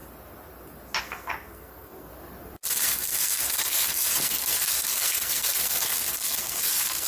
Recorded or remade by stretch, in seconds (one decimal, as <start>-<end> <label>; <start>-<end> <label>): 0.0-1.0 recorded; 1.0-2.1 remade; 2.1-2.7 recorded; 2.7-7.1 remade